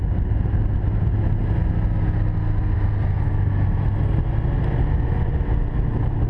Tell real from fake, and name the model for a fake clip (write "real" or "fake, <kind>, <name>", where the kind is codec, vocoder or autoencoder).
real